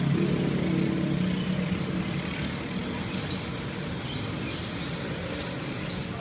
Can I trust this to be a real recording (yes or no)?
yes